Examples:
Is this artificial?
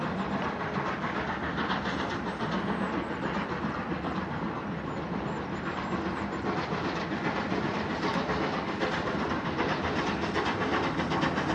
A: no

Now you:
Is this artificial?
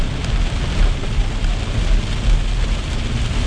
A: no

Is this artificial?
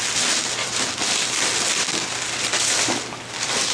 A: no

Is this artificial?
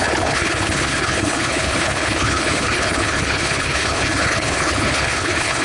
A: yes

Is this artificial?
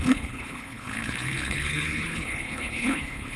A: yes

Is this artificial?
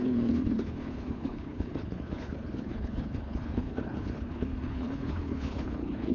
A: yes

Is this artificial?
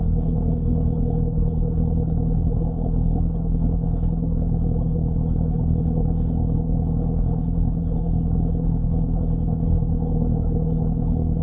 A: yes